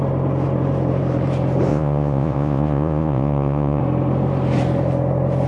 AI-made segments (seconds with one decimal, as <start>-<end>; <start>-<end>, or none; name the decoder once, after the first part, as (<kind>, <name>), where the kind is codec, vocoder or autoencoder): 1.7-3.8 (vocoder, Vocos)